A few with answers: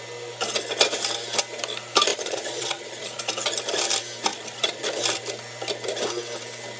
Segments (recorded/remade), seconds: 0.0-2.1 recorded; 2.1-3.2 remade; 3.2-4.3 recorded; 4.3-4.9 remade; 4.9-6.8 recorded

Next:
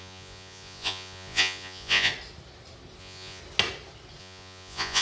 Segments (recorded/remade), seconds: 0.0-2.1 remade; 2.1-3.0 recorded; 3.0-3.4 remade; 3.4-4.2 recorded; 4.2-5.0 remade

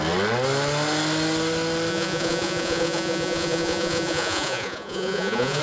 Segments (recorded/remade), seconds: 0.0-1.9 recorded; 1.9-5.6 remade

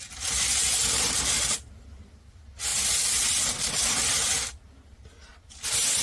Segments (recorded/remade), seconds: 0.0-6.0 recorded

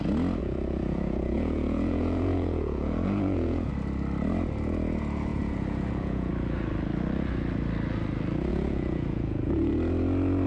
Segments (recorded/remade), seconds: 0.0-0.4 recorded; 0.4-3.7 remade; 3.7-5.3 recorded; 5.3-6.3 remade; 6.3-8.5 recorded; 8.5-9.7 remade; 9.7-10.5 recorded

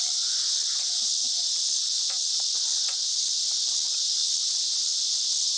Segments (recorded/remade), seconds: 0.0-5.6 recorded

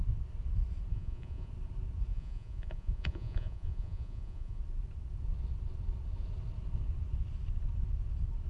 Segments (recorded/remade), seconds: 0.0-0.9 recorded; 0.9-1.5 remade; 1.5-2.1 recorded; 2.1-4.6 remade; 4.6-8.5 recorded